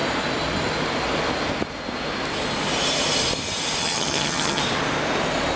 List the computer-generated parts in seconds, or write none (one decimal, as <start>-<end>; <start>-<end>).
3.8-4.6